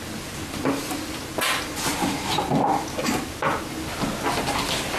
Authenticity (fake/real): real